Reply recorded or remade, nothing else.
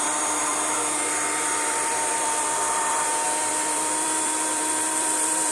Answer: remade